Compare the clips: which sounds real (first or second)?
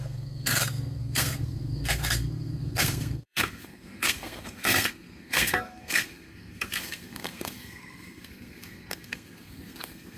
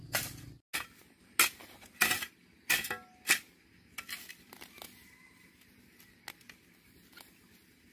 second